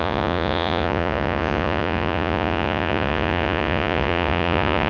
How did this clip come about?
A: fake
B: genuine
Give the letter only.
A